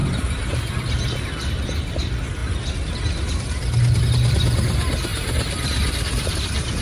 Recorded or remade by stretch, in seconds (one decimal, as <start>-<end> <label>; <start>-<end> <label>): 0.0-1.2 remade; 1.2-5.1 recorded; 5.1-6.8 remade